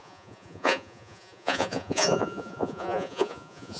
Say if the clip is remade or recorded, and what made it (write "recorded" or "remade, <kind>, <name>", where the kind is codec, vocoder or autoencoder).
remade, vocoder, Vocos